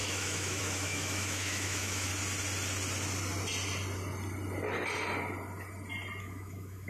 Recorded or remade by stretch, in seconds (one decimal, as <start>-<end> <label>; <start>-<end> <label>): 0.0-2.1 remade; 2.1-6.2 recorded; 6.2-6.9 remade